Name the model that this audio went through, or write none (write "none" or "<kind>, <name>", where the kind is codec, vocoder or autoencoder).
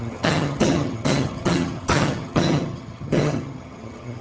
vocoder, HiFi-GAN